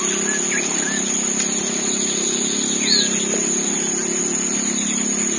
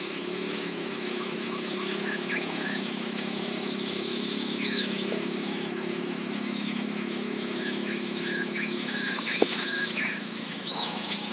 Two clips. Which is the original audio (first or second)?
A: first